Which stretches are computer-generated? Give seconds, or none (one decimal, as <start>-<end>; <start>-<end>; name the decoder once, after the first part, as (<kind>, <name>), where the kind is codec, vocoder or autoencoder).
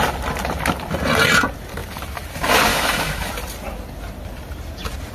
2.7-3.3 (autoencoder, DAC-VAE)